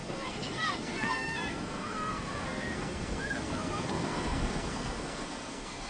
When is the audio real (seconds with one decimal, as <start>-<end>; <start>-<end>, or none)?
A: none